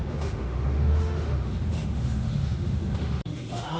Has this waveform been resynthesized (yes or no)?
yes